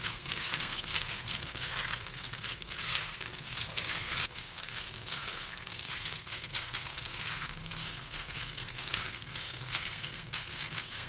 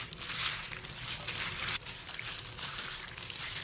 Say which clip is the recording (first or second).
second